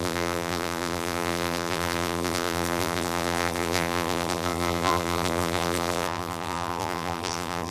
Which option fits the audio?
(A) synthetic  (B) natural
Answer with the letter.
A